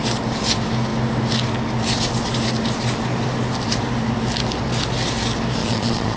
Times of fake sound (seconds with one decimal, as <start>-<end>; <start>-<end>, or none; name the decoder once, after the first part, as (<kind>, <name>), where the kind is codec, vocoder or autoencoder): 5.6-6.2 (vocoder, Vocos)